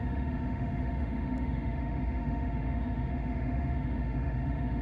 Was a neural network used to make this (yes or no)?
yes